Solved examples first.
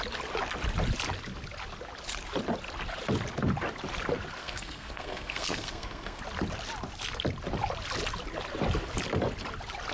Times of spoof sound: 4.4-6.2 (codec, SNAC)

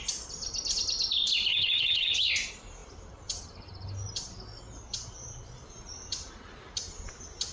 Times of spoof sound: 1.5-2.3 (vocoder, HiFi-GAN)

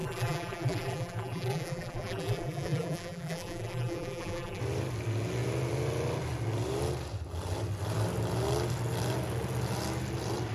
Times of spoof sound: 0.0-4.6 (vocoder, BigVGAN v2)

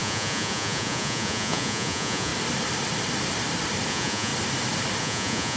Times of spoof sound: 0.0-2.3 (vocoder, Vocos); 3.9-4.3; 5.0-5.6

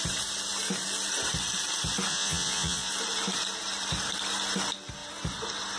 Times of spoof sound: 2.1-2.9 (vocoder, Vocos)

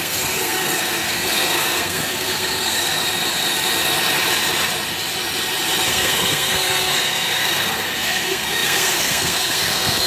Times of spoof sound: 0.0-3.0 (codec, SNAC); 5.9-10.1

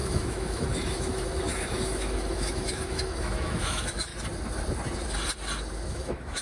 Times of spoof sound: 0.0-4.1 (autoencoder, DAC-VAE); 5.9-6.4

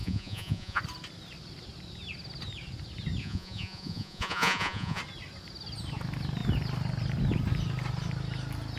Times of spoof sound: 0.0-0.8 (vocoder, Vocos); 3.2-5.0